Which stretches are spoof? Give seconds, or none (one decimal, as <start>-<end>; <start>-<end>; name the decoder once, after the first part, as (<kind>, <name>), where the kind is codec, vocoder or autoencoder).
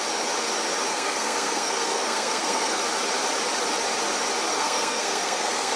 0.9-2.8 (codec, SNAC); 4.5-5.8